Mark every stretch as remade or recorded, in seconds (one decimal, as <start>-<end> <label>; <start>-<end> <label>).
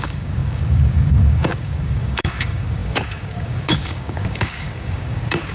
0.0-5.5 remade